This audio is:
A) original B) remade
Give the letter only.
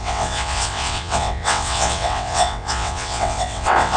B